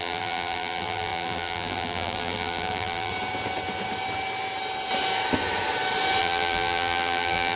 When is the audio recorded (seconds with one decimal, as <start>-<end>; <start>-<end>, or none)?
3.1-6.2